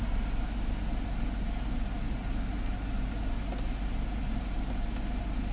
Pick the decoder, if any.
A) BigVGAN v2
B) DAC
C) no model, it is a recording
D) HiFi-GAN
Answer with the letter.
C